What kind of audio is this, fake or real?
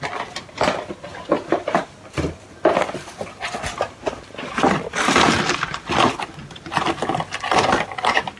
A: real